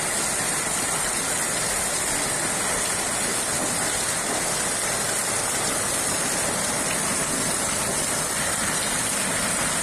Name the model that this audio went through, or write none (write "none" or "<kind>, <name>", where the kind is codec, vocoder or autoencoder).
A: none